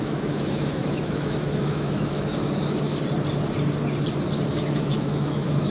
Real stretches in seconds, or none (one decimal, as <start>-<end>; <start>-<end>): 2.9-4.5

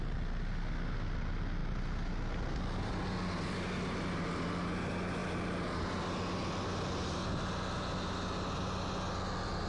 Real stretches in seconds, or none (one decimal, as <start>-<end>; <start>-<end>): 0.0-9.7

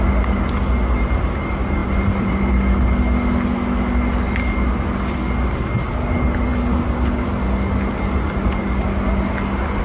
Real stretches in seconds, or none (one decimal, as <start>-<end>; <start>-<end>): 0.0-9.8

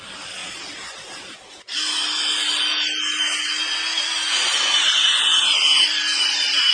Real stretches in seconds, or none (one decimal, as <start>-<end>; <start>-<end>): 0.0-6.7

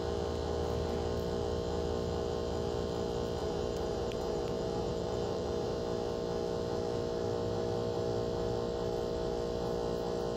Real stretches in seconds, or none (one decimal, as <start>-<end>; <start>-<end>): 0.0-3.4; 5.8-10.4

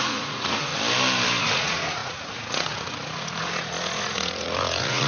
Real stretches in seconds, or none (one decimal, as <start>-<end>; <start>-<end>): 0.7-1.4

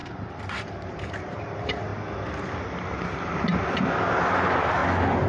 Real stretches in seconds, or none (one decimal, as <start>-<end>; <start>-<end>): 1.9-4.2; 4.8-5.3